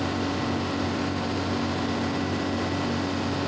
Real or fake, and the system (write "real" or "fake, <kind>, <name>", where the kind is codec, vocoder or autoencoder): real